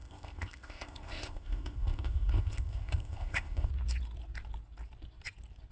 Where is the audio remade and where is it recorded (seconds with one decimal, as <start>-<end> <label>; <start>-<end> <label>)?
0.0-3.7 remade; 3.7-5.7 recorded